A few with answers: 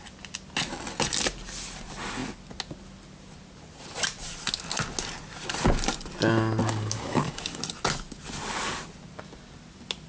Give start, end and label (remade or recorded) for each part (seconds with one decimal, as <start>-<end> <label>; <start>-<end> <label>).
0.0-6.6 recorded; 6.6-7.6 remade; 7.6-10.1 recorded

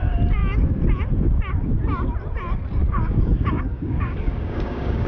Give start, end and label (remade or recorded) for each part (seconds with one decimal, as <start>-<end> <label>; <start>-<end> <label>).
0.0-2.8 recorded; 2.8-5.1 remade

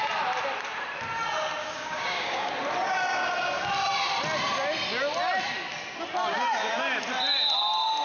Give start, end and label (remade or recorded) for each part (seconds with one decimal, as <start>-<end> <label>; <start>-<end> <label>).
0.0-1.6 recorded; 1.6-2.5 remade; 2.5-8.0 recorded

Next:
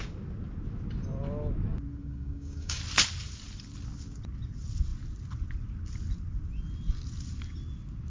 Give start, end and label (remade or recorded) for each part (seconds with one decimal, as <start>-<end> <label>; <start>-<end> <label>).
0.0-1.9 recorded; 1.9-2.8 remade; 2.8-8.1 recorded

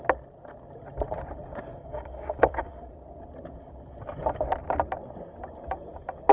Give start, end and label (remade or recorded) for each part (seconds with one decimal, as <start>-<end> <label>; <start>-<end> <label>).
0.0-1.8 recorded; 1.8-2.9 remade; 2.9-6.3 recorded